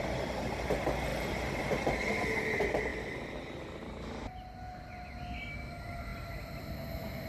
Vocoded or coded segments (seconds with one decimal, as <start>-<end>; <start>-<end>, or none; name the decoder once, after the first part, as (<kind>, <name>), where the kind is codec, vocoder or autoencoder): 1.1-2.2 (vocoder, BigVGAN v2); 2.9-3.6; 6.1-6.7